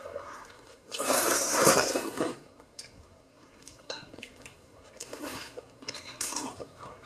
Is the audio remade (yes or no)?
yes